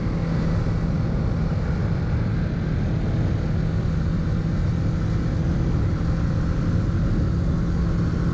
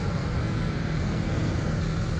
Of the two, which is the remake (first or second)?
second